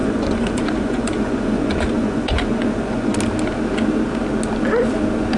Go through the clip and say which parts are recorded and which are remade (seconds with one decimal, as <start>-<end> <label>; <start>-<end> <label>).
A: 0.0-3.2 remade; 3.2-5.4 recorded